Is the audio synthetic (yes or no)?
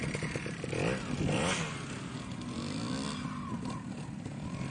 no